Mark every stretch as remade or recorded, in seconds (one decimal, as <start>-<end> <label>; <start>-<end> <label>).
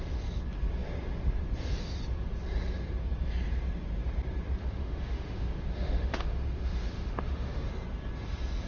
0.0-4.6 recorded; 4.6-7.7 remade; 7.7-8.7 recorded